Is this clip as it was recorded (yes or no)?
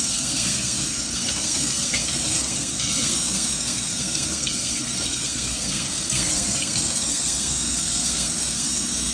no